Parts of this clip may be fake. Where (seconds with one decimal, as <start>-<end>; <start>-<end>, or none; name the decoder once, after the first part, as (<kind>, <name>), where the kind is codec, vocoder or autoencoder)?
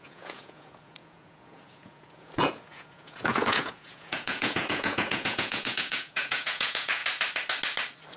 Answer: 0.0-7.0 (vocoder, Vocos)